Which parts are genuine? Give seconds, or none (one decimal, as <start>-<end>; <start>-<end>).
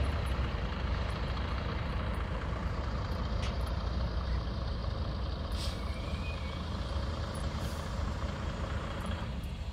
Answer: 4.8-5.4